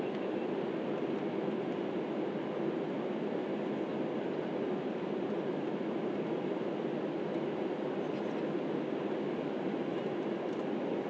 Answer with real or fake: real